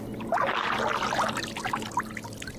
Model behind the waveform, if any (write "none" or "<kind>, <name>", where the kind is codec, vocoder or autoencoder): none